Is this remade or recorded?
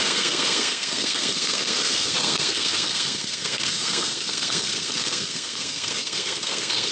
remade